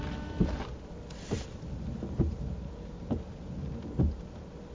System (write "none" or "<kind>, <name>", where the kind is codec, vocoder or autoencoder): none